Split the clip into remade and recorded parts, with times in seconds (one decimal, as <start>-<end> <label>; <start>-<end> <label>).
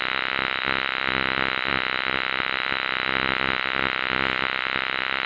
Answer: 0.0-5.3 recorded